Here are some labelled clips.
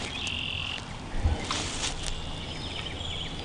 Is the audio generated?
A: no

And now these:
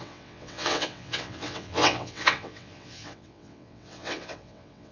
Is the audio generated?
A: yes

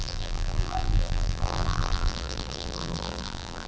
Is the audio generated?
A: yes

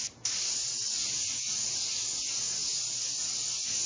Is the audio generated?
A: no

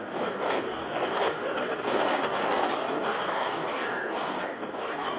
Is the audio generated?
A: yes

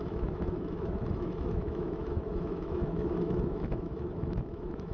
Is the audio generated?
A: yes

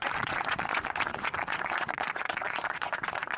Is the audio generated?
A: yes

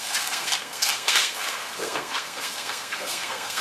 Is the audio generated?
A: yes